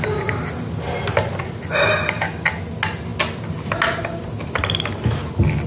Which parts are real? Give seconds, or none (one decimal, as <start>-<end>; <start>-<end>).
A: 0.0-5.7